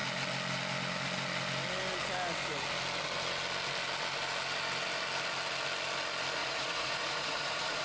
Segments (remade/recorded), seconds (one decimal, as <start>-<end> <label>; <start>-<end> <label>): 0.0-6.4 recorded; 6.4-7.8 remade